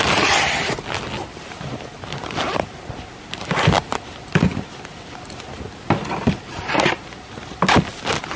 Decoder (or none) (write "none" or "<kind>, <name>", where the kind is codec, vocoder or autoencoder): none